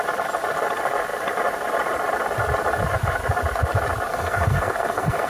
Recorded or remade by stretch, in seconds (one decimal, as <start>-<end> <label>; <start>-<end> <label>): 0.0-4.1 recorded; 4.1-5.3 remade